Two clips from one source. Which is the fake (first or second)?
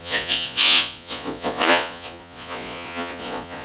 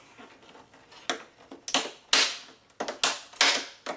first